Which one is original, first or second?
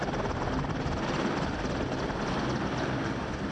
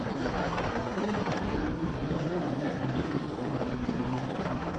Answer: first